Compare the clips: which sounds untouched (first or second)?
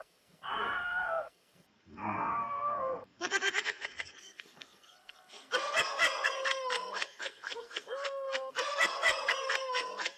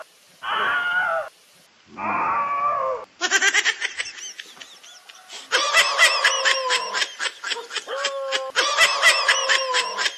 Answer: second